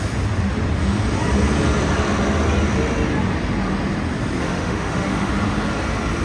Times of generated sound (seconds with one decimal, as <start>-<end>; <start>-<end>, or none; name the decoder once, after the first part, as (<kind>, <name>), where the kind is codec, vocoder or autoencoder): 4.4-5.3 (autoencoder, DAC-VAE)